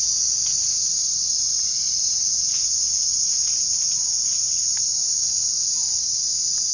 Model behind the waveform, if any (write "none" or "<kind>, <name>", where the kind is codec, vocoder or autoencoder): none